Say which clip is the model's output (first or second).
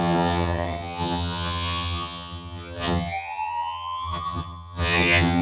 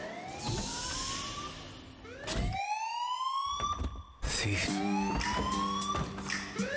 first